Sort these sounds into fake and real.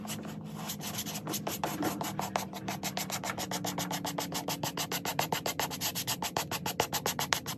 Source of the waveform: real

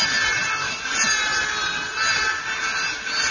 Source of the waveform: real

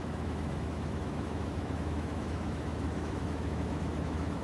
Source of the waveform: fake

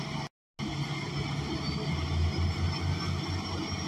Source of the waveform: real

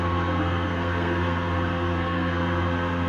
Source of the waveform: fake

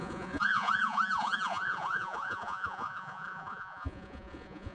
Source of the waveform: fake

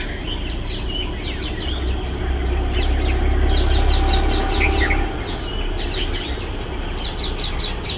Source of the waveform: real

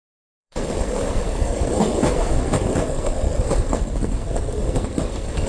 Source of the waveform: fake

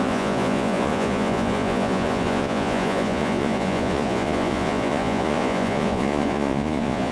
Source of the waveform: fake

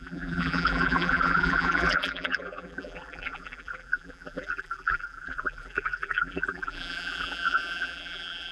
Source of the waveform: fake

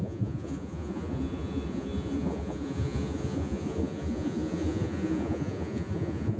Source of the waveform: fake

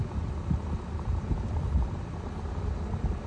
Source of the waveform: real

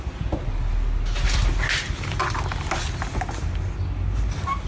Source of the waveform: real